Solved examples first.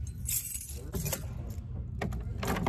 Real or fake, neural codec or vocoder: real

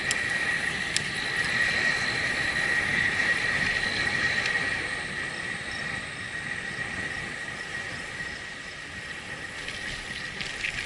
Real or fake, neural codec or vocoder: real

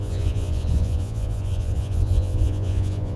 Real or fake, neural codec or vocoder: fake, vocoder, Vocos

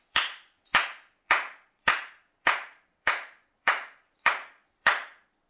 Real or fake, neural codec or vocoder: fake, vocoder, Vocos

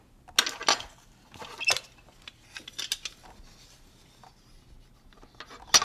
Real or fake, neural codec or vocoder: real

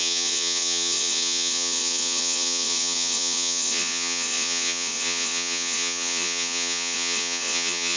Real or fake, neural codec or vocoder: fake, vocoder, Vocos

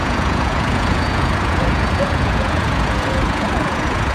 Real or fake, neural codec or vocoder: fake, vocoder, Vocos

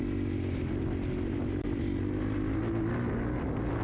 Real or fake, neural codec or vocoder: real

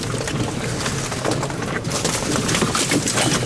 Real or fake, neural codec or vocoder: real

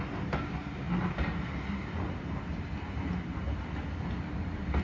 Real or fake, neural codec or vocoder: real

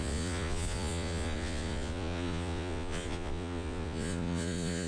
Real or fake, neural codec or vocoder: fake, vocoder, Vocos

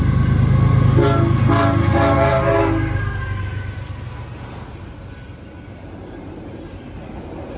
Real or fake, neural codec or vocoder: real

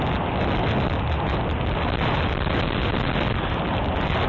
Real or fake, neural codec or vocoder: real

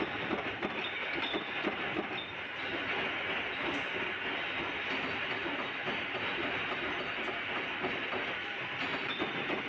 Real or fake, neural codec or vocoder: real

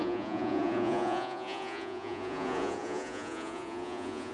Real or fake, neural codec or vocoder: fake, vocoder, Vocos